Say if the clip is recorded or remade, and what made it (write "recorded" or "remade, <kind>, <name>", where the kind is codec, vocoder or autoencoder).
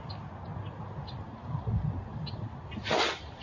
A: recorded